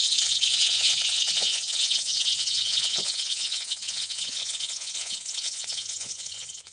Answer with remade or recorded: remade